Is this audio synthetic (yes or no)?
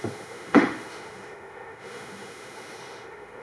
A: yes